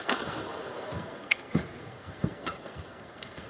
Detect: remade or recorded remade